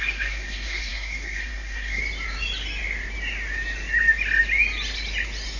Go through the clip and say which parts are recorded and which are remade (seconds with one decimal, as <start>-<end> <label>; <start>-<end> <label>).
0.0-2.0 remade; 2.0-5.6 recorded